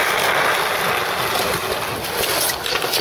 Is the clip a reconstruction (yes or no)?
no